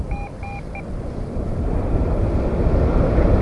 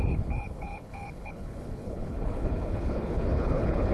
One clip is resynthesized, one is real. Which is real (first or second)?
first